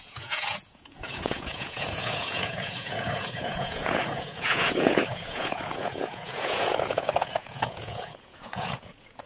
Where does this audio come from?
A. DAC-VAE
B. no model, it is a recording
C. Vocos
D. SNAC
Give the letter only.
C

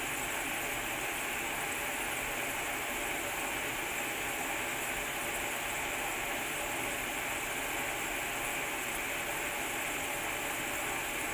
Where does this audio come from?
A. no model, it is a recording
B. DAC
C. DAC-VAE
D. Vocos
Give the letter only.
A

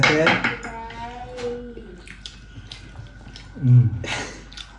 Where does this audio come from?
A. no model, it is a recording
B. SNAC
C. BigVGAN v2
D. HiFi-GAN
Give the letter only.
A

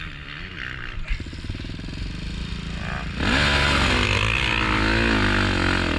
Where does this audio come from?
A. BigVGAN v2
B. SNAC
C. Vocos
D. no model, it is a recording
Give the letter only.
D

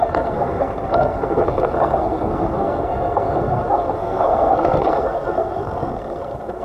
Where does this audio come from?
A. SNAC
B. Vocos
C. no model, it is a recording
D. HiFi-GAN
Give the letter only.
A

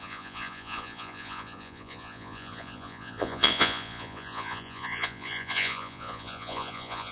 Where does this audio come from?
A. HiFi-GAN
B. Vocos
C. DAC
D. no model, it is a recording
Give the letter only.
B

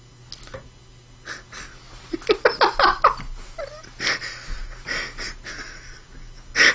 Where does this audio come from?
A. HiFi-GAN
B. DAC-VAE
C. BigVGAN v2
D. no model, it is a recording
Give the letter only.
D